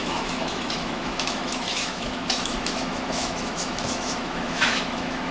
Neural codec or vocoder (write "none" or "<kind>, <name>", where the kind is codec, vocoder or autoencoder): autoencoder, DAC-VAE